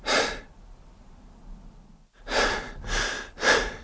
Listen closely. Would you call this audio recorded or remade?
recorded